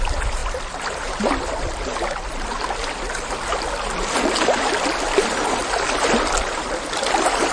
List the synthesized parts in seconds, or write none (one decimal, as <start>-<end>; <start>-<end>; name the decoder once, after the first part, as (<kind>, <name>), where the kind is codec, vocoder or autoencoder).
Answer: 0.0-0.4 (vocoder, BigVGAN v2); 4.4-5.6; 6.5-7.5